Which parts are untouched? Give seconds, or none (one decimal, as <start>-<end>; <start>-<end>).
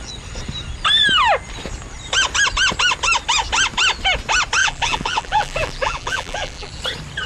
0.0-4.6; 6.7-7.3